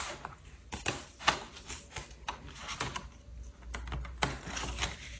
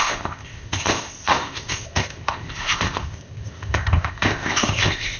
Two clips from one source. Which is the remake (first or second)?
second